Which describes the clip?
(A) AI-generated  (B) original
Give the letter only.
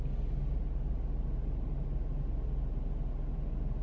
B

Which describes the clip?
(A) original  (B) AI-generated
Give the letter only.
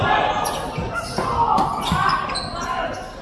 A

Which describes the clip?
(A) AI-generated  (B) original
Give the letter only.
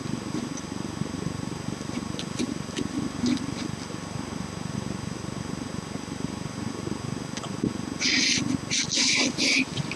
B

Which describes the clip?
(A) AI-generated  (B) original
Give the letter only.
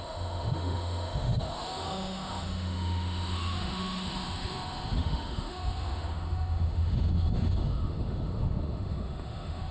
A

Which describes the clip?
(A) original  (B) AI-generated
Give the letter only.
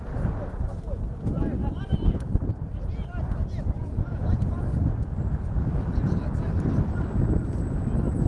A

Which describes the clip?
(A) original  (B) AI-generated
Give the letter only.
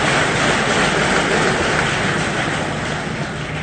A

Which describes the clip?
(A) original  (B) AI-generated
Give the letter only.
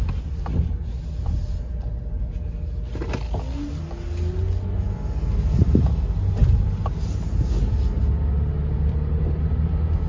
A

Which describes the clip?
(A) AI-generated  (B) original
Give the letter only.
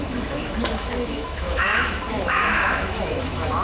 A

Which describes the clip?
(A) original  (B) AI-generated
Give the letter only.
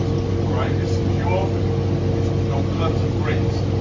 A